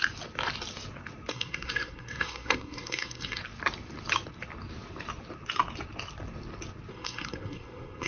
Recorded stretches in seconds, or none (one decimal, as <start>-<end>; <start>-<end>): 0.0-1.3; 3.4-6.9

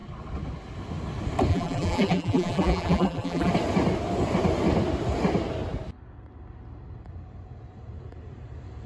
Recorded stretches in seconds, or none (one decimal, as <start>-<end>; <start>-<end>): 0.0-1.5; 3.5-8.9

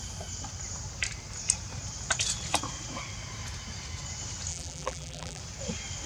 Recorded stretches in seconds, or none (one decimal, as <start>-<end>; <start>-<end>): 0.0-4.5; 5.4-6.1

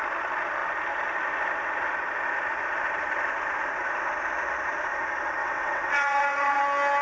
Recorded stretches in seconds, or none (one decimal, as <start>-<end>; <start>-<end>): 0.0-5.4; 6.6-7.0

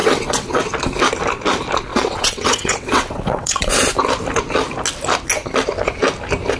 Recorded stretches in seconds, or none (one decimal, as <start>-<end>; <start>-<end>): 0.6-1.9; 3.7-6.6

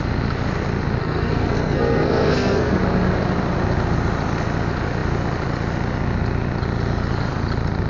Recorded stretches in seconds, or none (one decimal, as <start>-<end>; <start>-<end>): 0.0-1.0; 2.8-7.9